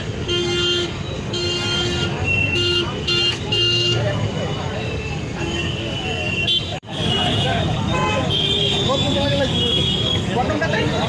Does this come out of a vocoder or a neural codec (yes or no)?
yes